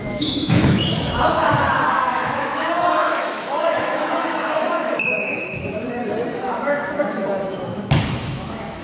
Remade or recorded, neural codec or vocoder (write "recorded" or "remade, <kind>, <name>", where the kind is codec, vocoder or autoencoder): remade, autoencoder, DAC-VAE